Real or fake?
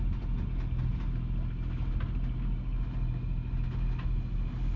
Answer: real